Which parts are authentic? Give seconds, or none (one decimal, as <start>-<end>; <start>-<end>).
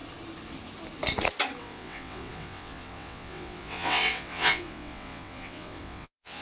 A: 0.0-1.6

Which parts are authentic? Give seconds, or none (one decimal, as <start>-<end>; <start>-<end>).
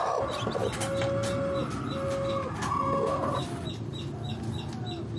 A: 0.0-5.2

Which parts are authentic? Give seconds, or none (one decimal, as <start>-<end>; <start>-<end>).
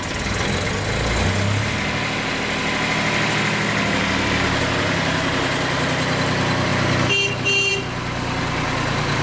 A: 0.0-9.2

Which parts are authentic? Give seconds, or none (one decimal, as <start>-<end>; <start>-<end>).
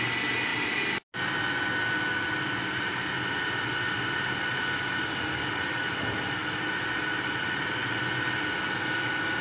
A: 0.0-9.4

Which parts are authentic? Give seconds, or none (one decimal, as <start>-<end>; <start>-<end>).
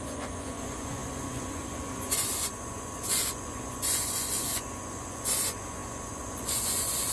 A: none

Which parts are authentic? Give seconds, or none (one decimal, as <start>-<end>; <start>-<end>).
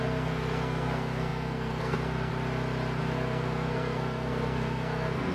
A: 2.3-3.0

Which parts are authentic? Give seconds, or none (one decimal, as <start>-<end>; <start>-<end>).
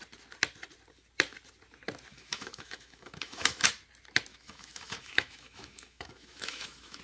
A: 0.0-2.1; 3.7-4.3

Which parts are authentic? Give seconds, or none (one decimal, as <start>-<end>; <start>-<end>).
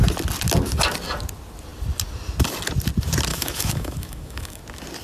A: 0.0-3.3; 4.6-5.0